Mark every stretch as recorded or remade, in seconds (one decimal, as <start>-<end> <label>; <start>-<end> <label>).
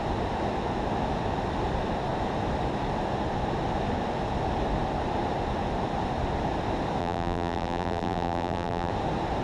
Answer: 0.0-7.0 recorded; 7.0-8.9 remade; 8.9-9.4 recorded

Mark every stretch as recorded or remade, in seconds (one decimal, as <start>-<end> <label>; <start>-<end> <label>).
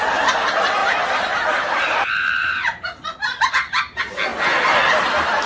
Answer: 0.0-0.8 recorded; 0.8-3.5 remade; 3.5-5.5 recorded